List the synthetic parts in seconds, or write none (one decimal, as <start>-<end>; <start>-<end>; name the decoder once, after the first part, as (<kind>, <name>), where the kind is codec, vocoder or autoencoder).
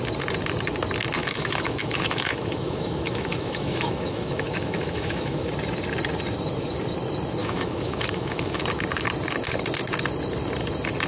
1.2-5.5 (autoencoder, DAC-VAE); 7.4-8.6